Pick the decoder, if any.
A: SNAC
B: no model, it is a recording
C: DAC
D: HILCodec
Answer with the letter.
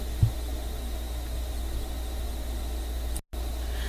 B